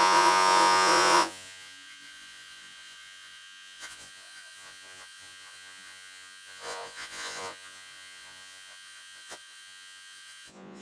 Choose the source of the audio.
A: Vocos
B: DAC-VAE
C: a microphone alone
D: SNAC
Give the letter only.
A